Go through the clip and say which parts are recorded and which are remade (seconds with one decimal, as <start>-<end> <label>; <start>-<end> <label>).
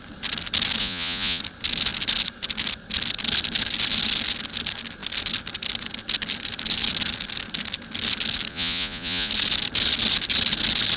0.0-0.8 recorded; 0.8-1.4 remade; 1.4-8.5 recorded; 8.5-9.3 remade; 9.3-11.0 recorded